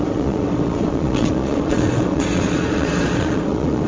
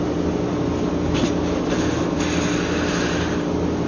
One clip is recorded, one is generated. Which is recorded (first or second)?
second